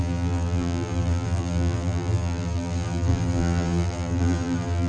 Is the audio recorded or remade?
remade